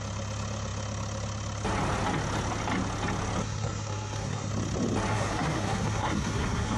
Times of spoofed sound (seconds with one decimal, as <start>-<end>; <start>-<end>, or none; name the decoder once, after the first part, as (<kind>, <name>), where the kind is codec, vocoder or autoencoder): 3.4-4.5 (codec, SNAC); 5.1-6.8